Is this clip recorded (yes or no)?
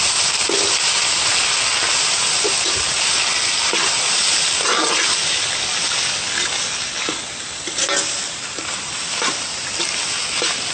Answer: yes